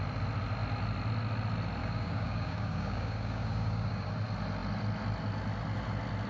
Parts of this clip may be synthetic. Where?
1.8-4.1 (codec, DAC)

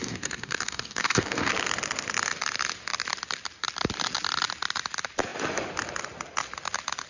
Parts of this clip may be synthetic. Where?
0.0-1.5 (codec, DAC)

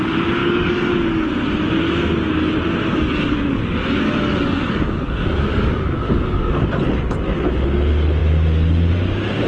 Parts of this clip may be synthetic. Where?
0.4-0.9 (codec, DAC); 2.9-6.6

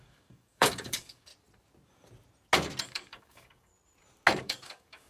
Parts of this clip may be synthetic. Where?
0.0-1.3 (codec, DAC); 2.8-3.7; 4.4-5.1

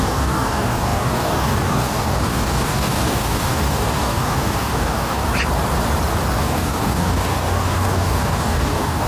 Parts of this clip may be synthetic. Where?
0.0-5.2 (codec, DAC); 6.3-9.1

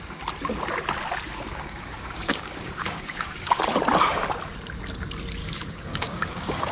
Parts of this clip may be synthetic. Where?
1.5-3.6 (codec, DAC); 5.4-6.7

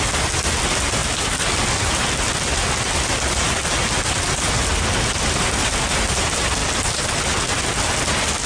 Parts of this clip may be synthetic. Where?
none

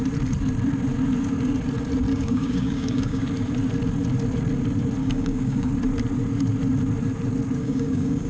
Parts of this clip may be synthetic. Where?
2.1-3.2 (codec, DAC); 5.0-5.7; 7.6-8.3